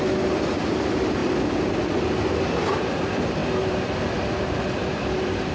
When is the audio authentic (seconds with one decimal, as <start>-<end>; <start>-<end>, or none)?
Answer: none